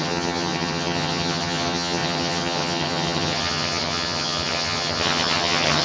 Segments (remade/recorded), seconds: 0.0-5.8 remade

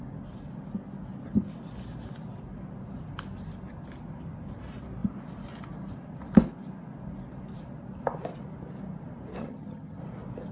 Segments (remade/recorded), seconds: 0.0-9.4 recorded; 9.4-10.0 remade; 10.0-10.5 recorded

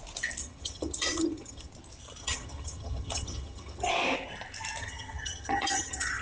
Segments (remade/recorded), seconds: 0.0-0.4 recorded; 0.4-1.7 remade; 1.7-2.2 recorded; 2.2-3.9 remade; 3.9-4.8 recorded; 4.8-6.2 remade

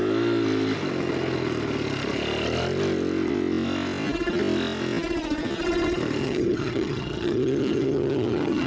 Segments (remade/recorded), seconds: 0.0-6.2 recorded; 6.2-8.7 remade

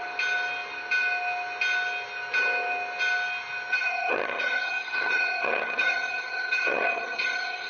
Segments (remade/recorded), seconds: 0.0-3.7 recorded; 3.7-7.7 remade